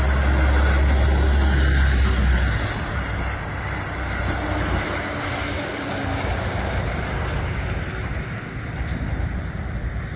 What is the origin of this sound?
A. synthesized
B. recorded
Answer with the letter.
B